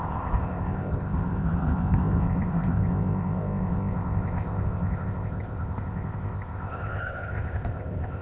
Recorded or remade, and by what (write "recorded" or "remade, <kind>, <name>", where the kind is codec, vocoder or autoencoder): remade, codec, ZipCodec